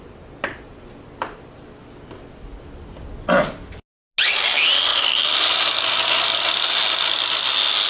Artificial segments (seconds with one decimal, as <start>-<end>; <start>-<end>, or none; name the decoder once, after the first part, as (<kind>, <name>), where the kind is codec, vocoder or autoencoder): none